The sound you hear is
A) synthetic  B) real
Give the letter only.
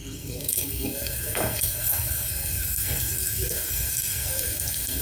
A